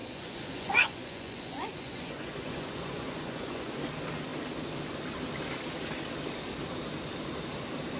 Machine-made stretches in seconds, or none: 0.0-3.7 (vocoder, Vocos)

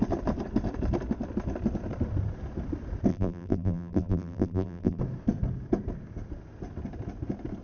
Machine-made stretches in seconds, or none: 3.1-5.0 (vocoder, BigVGAN v2)

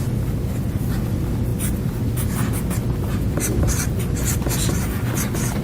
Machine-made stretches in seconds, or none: none

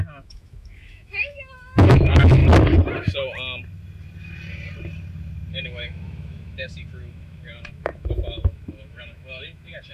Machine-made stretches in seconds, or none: 0.0-2.4 (autoencoder, DAC-VAE); 5.5-9.9

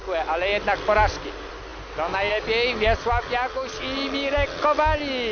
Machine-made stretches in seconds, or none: none

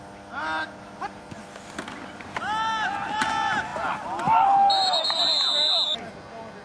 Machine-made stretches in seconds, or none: none

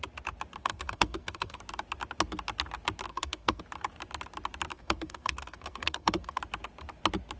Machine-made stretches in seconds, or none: 0.6-1.6 (codec, SNAC); 3.1-3.6; 4.7-6.4

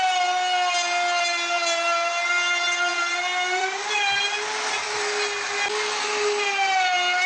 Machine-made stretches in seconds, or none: 2.9-4.7 (vocoder, BigVGAN v2)